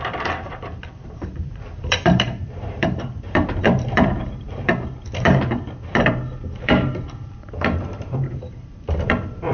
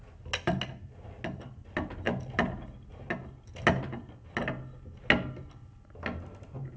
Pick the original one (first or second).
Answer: second